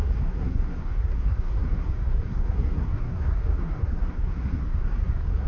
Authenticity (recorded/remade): remade